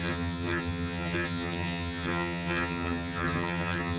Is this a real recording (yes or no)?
no